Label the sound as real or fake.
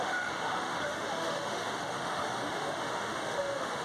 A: fake